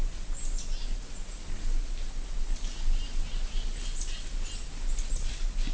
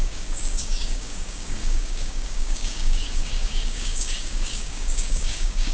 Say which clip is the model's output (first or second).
second